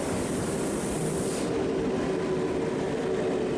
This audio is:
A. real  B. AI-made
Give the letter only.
A